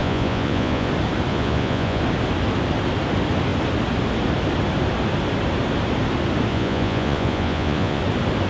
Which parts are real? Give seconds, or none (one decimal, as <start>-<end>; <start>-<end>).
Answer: 0.9-1.3; 2.0-6.5; 8.0-8.5